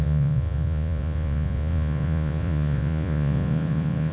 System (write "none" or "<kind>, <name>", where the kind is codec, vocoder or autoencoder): vocoder, Vocos